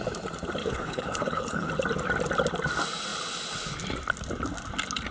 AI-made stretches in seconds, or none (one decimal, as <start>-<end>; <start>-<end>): 0.6-1.7